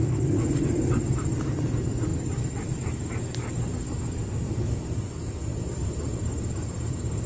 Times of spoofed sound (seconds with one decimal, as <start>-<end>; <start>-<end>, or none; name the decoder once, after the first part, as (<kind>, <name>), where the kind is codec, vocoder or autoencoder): none